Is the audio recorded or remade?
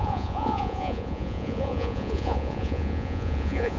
remade